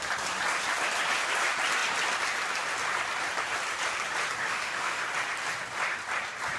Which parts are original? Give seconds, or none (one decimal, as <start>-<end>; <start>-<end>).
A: 0.0-4.4; 5.0-6.6